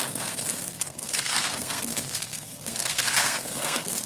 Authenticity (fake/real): fake